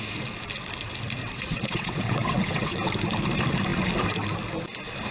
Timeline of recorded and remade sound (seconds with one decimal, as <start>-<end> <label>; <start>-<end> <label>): 0.0-1.2 recorded; 1.2-2.9 remade; 2.9-5.1 recorded